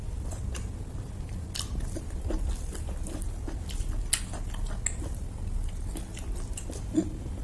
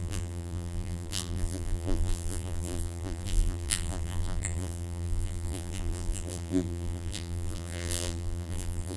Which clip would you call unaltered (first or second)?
first